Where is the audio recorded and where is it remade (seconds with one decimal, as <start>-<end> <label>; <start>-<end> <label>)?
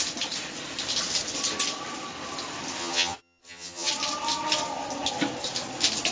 0.0-2.8 recorded; 2.8-3.9 remade; 3.9-6.1 recorded